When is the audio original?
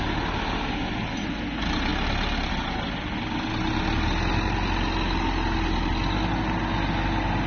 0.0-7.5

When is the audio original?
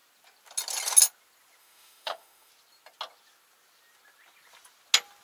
0.0-1.6; 2.5-5.2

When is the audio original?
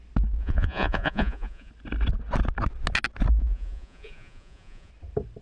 0.0-0.4; 1.7-3.4; 4.9-5.4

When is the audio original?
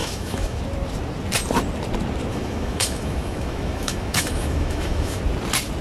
0.6-2.3; 5.2-5.8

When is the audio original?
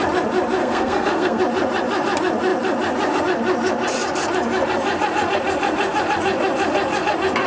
0.0-0.6; 1.4-7.5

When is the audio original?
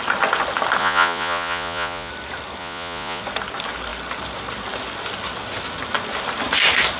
0.0-0.8; 2.1-2.6; 3.2-7.0